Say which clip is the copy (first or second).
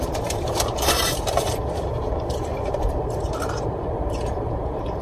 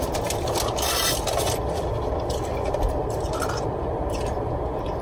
first